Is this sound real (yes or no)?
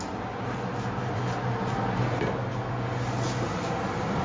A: yes